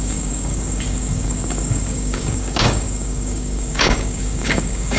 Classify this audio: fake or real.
fake